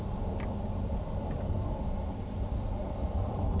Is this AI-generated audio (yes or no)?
no